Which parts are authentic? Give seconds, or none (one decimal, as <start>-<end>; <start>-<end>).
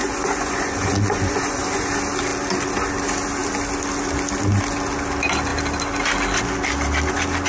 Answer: 1.9-7.5